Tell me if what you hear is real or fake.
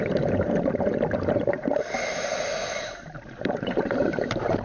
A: fake